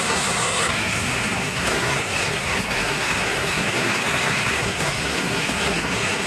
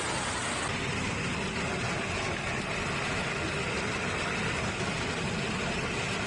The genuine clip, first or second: second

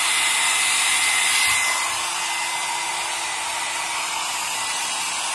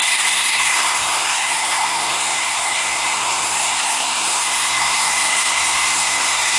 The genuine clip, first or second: first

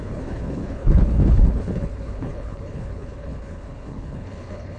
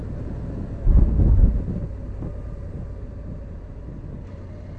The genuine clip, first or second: second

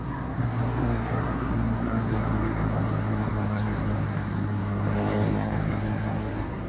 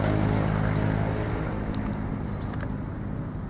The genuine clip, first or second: second